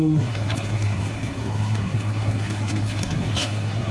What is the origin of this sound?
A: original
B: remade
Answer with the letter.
B